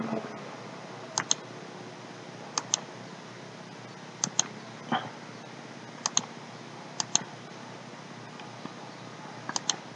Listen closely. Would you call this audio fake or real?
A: real